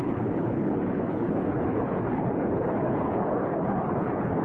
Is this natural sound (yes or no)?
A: no